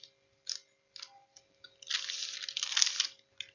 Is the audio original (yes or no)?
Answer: yes